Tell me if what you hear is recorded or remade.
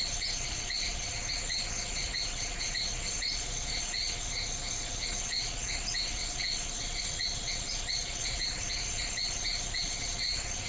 remade